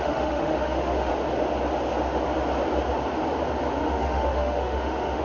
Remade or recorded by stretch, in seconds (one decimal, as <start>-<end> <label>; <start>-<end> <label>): 0.0-1.1 remade; 1.1-3.8 recorded; 3.8-5.2 remade